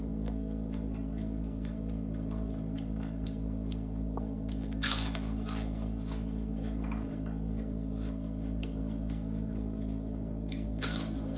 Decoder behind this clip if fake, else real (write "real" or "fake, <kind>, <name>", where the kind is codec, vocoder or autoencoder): fake, codec, SNAC